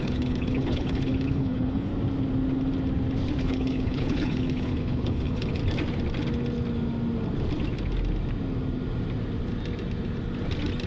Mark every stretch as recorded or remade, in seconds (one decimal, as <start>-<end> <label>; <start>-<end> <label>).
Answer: 0.0-1.9 remade; 1.9-3.4 recorded; 3.4-5.6 remade; 5.6-10.9 recorded